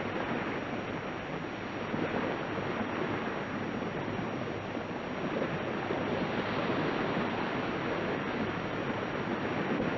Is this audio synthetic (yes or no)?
no